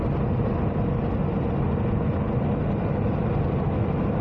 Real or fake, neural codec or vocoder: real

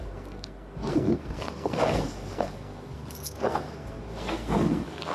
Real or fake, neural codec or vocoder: fake, codec, SNAC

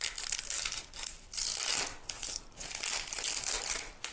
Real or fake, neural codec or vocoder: real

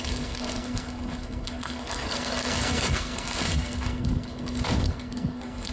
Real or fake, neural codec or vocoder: fake, codec, SNAC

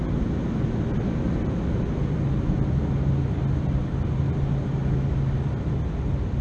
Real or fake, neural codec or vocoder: real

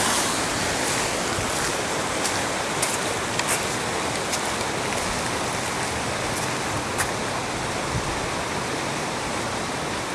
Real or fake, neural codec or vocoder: real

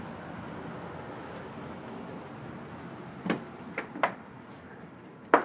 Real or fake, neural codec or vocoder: real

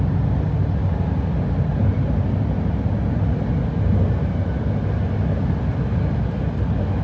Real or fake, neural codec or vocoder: real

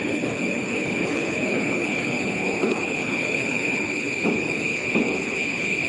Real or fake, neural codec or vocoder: fake, codec, HILCodec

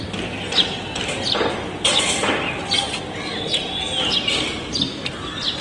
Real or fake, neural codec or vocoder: real